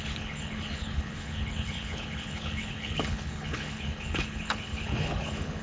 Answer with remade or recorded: remade